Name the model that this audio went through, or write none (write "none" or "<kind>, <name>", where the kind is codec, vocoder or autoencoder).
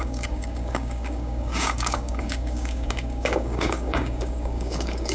codec, DAC